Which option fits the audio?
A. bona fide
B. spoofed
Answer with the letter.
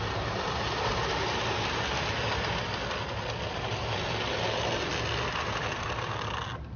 A